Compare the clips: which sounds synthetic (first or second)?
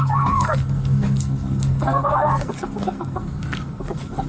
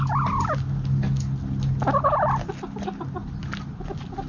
first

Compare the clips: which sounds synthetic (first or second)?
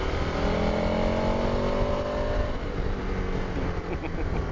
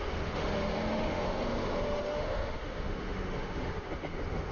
second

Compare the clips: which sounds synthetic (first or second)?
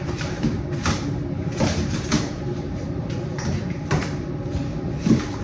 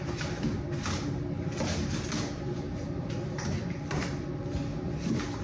first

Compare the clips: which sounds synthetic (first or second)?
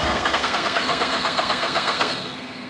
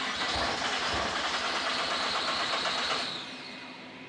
first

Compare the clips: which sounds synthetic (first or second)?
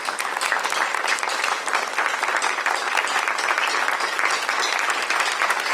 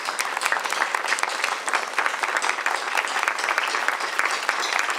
second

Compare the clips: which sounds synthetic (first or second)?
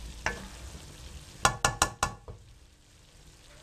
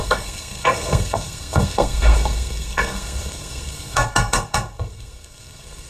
second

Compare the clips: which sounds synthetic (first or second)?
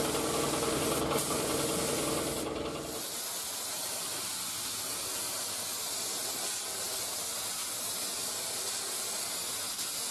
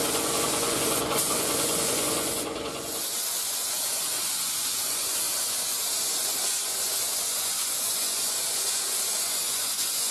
second